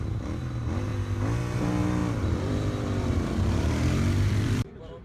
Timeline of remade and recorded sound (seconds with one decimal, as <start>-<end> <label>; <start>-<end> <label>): 0.0-2.0 recorded; 2.0-5.0 remade